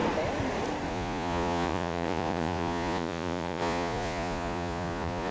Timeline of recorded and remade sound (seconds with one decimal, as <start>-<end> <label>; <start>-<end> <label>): 0.0-0.9 recorded; 0.9-5.3 remade